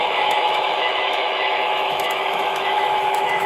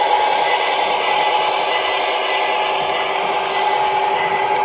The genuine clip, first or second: second